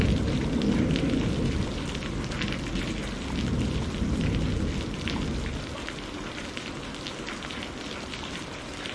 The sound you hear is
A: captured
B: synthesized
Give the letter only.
A